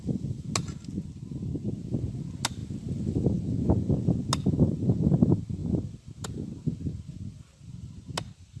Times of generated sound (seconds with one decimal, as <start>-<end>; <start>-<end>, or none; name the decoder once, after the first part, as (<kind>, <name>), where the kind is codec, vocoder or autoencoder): none